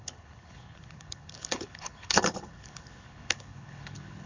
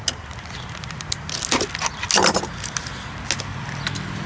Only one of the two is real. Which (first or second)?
second